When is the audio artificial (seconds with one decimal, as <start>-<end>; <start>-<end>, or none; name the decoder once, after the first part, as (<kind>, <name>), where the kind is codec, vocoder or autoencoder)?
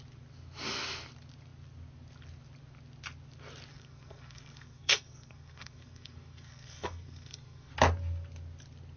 3.7-7.7 (codec, SNAC)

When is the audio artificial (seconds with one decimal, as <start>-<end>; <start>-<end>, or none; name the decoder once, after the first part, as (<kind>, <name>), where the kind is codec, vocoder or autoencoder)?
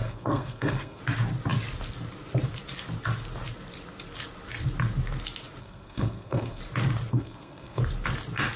0.0-1.0 (codec, SNAC); 5.6-6.6; 7.1-7.8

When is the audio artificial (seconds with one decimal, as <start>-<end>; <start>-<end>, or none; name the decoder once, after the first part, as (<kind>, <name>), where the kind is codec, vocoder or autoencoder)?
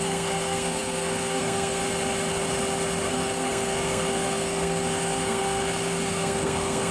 0.0-1.8 (codec, SNAC); 3.1-6.9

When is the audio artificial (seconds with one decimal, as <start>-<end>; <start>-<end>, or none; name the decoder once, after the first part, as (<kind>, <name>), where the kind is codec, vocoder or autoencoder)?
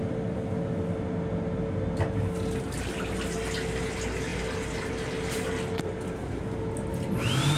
none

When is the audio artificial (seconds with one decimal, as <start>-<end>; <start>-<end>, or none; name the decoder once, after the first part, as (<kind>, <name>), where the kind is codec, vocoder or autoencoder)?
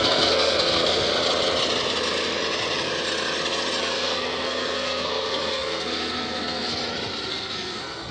0.0-1.1 (codec, SNAC); 3.8-6.8; 7.3-8.1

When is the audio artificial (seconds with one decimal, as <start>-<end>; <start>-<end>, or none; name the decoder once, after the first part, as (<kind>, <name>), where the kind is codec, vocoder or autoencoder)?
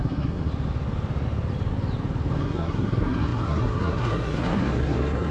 0.0-0.5 (codec, SNAC); 2.4-5.3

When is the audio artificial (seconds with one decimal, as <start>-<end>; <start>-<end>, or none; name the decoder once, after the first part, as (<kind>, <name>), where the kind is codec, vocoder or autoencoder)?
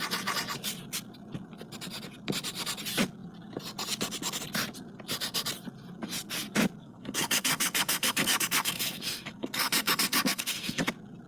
6.8-10.8 (codec, SNAC)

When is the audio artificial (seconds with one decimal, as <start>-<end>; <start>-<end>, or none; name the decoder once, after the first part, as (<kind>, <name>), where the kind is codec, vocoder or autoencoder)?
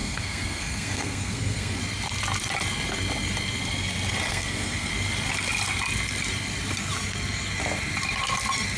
0.0-1.8 (codec, SNAC); 4.3-4.9